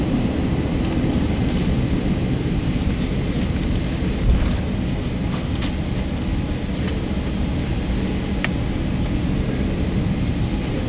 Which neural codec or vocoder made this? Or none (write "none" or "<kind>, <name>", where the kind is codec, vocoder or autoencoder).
none